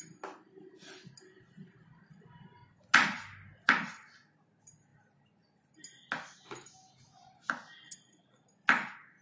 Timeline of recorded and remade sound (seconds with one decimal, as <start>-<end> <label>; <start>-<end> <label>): 0.0-9.2 recorded